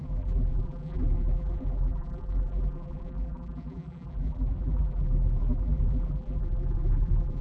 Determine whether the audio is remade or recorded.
remade